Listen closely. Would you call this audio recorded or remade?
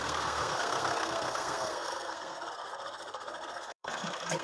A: remade